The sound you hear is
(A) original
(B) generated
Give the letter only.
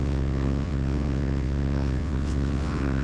B